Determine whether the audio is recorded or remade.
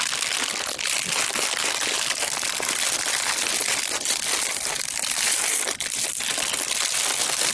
recorded